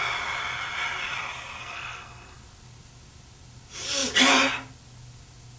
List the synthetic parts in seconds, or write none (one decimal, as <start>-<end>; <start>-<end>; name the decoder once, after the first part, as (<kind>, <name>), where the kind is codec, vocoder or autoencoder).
1.6-2.4 (codec, SNAC)